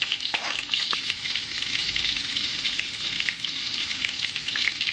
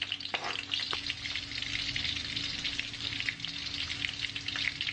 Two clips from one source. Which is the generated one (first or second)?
first